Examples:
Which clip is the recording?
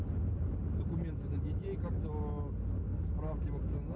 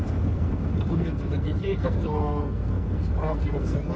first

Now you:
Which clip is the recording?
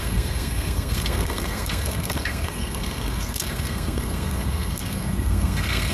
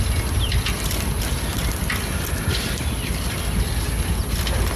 second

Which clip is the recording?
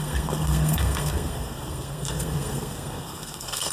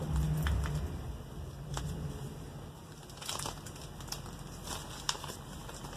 second